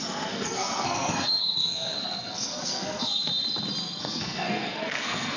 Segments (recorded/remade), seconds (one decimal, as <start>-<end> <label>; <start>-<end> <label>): 0.0-3.3 remade; 3.3-4.0 recorded; 4.0-5.4 remade